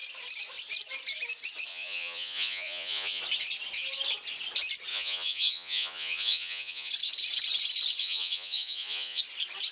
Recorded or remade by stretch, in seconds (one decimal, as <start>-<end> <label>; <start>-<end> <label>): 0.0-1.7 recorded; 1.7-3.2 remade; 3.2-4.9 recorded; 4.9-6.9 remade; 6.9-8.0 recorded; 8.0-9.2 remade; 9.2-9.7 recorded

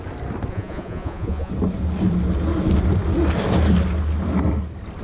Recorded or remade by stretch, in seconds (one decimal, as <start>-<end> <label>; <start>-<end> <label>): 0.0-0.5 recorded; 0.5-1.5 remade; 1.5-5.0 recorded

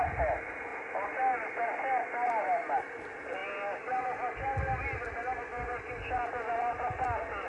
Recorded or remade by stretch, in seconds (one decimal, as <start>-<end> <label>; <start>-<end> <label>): 0.0-7.5 recorded